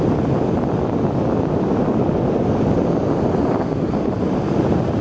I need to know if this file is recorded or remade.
recorded